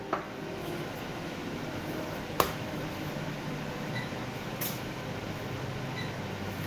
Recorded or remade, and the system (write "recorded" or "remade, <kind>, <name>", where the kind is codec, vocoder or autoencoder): remade, autoencoder, DAC-VAE